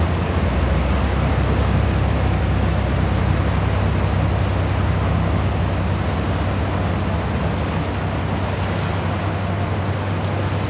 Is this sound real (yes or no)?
yes